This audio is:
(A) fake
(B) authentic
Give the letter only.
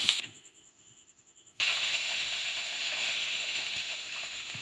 A